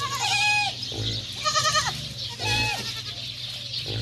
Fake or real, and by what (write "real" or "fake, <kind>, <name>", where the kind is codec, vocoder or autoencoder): real